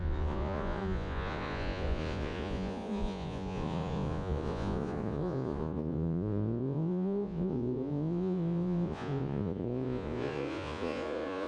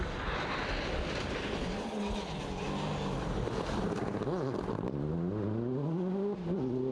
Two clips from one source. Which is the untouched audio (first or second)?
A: second